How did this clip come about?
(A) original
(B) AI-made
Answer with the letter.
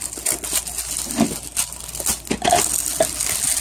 A